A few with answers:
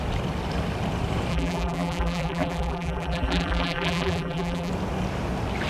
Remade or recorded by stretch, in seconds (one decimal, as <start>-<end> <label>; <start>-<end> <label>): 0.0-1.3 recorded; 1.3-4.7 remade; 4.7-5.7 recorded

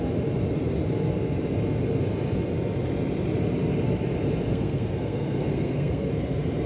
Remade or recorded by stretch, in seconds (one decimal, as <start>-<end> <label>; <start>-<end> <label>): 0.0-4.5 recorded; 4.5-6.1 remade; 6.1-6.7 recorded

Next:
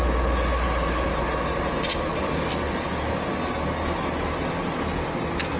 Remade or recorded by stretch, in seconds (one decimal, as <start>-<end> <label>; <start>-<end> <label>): 0.0-5.6 recorded

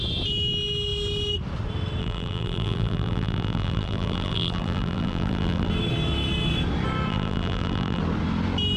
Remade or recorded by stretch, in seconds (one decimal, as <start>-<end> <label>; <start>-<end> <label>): 0.0-2.0 recorded; 2.0-5.7 remade; 5.7-7.1 recorded; 7.1-8.0 remade; 8.0-8.8 recorded

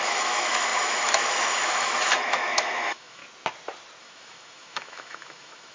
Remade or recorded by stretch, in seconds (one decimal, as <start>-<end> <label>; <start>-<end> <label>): 0.0-3.2 remade; 3.2-4.0 recorded; 4.0-5.7 remade

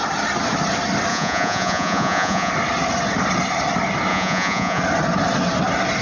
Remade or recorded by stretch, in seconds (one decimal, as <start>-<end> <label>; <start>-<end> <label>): 0.0-1.1 recorded; 1.1-2.5 remade; 2.5-4.1 recorded; 4.1-4.8 remade; 4.8-6.0 recorded

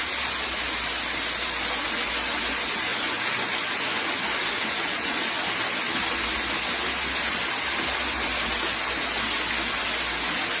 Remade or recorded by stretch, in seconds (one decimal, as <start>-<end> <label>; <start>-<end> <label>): 0.0-2.9 recorded; 2.9-5.3 remade; 5.3-10.6 recorded